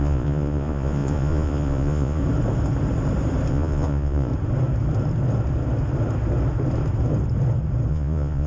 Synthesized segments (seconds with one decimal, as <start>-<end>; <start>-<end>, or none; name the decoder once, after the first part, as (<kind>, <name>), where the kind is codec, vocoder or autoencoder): 0.0-2.2 (vocoder, Vocos); 3.5-4.3; 7.9-8.5